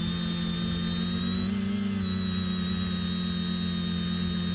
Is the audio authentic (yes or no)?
yes